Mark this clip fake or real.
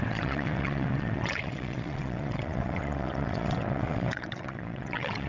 fake